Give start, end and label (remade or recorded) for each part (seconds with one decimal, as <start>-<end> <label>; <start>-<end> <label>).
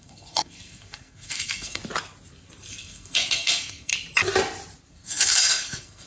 0.0-1.8 remade; 1.8-2.7 recorded; 2.7-3.9 remade; 3.9-4.9 recorded; 4.9-6.1 remade